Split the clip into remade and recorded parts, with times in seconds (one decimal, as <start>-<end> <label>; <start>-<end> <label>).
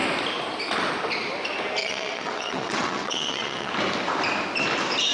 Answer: 0.0-1.8 recorded; 1.8-3.7 remade; 3.7-5.1 recorded